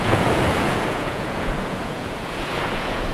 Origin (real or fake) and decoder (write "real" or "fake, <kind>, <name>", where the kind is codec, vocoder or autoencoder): fake, vocoder, Vocos